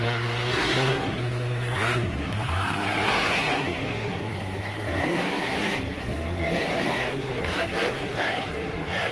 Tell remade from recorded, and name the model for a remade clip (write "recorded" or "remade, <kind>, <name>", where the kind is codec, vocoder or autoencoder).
remade, codec, SNAC